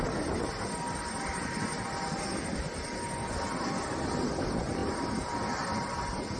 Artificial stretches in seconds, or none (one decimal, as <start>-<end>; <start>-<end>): 4.8-6.0